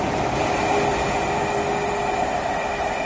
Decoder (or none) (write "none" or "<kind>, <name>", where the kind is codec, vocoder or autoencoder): none